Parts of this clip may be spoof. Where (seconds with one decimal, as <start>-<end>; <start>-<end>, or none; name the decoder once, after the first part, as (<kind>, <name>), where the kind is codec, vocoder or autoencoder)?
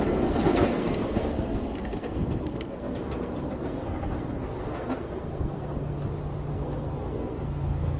0.0-6.0 (codec, SNAC); 6.5-8.0